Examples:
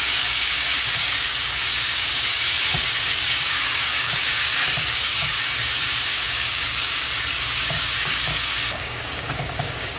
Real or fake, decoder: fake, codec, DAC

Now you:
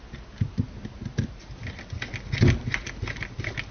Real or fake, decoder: real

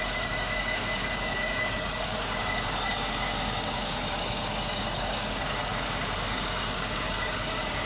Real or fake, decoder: fake, codec, DAC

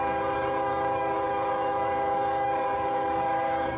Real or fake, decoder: fake, codec, DAC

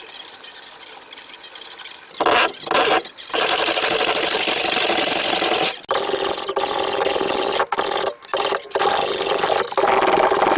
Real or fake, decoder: real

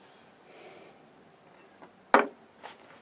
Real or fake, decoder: real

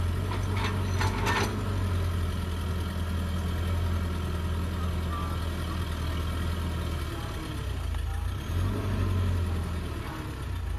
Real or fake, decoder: real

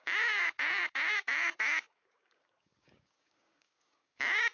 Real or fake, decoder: fake, codec, DAC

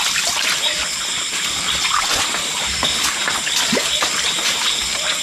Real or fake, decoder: real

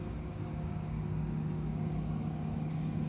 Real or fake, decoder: fake, codec, DAC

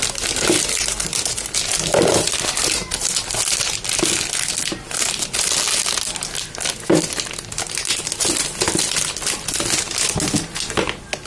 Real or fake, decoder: real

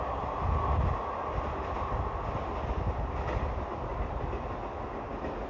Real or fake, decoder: real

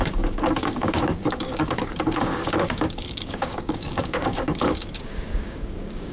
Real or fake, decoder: fake, codec, DAC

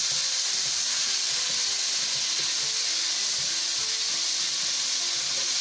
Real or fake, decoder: real